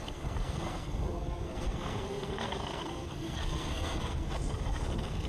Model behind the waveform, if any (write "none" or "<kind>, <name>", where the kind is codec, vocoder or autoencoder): codec, SNAC